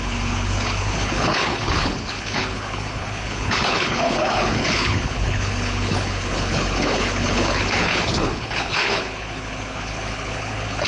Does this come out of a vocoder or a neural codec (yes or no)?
yes